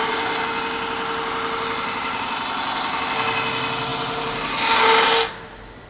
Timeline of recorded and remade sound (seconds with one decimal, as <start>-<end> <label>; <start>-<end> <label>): 0.0-5.9 recorded